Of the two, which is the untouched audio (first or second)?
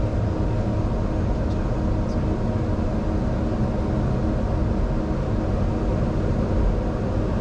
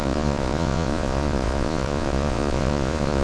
first